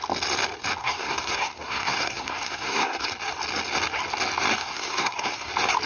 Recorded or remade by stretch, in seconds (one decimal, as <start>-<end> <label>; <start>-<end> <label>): 0.0-0.8 recorded; 0.8-3.1 remade; 3.1-4.6 recorded; 4.6-5.5 remade; 5.5-5.9 recorded